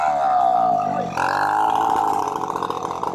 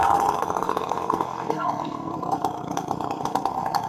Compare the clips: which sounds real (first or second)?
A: first